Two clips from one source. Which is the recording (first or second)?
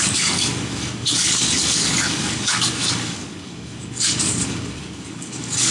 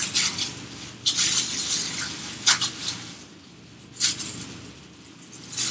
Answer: second